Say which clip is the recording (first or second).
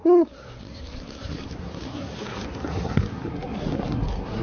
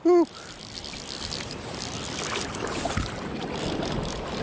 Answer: second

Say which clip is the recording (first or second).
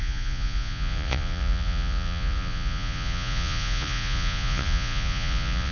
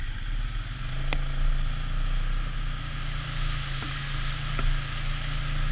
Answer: second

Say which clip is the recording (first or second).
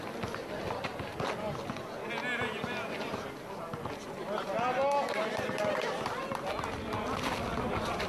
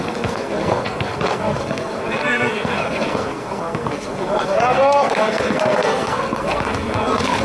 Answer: first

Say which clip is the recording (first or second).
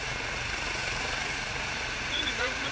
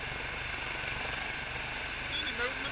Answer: second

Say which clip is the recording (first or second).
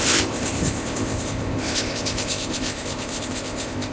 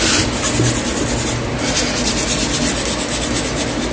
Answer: second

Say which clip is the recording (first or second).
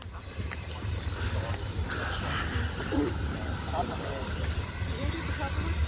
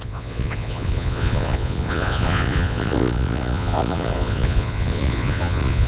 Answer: first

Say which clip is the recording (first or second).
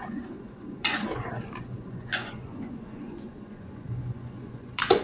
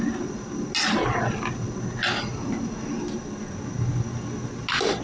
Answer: second